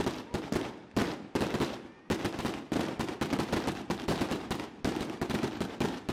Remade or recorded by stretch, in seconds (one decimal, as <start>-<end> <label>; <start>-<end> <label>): 0.0-6.1 recorded